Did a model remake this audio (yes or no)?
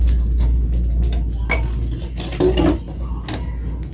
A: no